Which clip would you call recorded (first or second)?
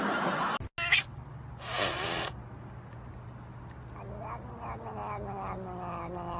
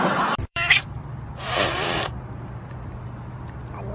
first